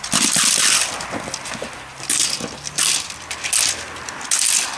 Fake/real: real